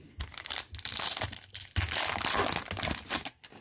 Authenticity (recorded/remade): recorded